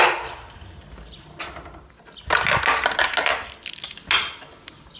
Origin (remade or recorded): recorded